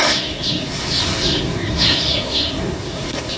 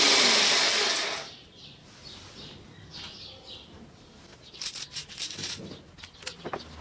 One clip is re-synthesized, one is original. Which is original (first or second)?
second